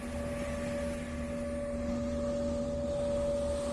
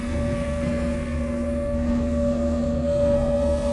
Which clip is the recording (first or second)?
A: first